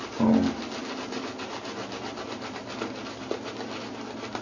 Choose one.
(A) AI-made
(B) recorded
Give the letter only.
B